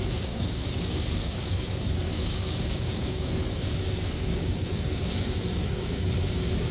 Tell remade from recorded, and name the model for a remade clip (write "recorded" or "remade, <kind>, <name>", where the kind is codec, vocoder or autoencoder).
remade, codec, DAC